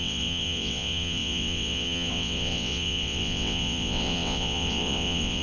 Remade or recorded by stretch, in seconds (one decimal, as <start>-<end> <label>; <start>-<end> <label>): 0.0-5.4 remade